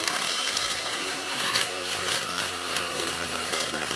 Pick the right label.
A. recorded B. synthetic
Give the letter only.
B